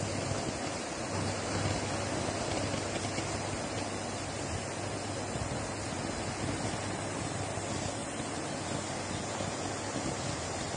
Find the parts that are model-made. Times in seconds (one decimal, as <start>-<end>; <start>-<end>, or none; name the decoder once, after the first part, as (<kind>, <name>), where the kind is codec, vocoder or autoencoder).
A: none